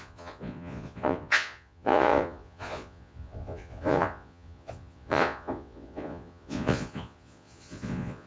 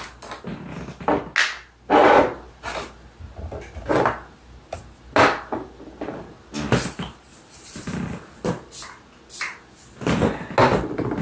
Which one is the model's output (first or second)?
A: first